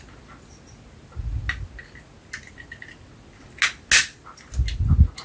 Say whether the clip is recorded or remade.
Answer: recorded